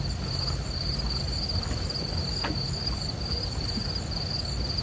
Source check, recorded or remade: recorded